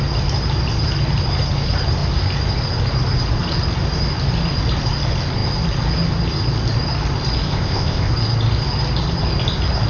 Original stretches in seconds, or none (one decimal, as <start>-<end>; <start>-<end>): 0.0-7.5; 8.1-9.9